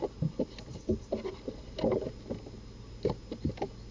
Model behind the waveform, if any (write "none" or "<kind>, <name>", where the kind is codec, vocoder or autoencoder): none